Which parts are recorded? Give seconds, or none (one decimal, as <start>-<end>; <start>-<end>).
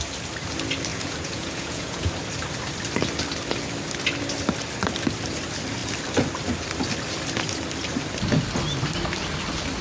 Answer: 0.0-0.9; 2.1-9.8